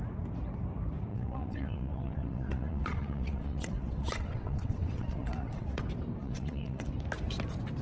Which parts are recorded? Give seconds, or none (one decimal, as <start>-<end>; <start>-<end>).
0.0-1.1; 5.8-6.2; 6.9-7.8